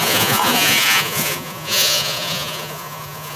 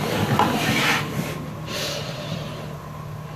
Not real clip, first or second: first